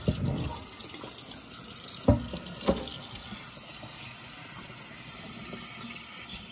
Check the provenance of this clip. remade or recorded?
recorded